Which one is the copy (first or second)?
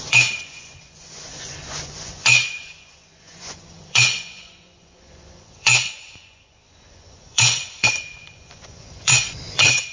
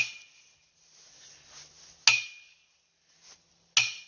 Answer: first